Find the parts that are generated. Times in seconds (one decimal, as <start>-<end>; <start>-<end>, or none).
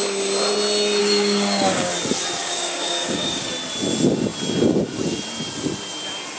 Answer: 1.0-1.9; 2.4-3.5